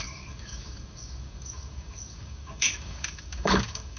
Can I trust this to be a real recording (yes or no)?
no